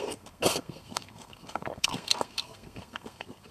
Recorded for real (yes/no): no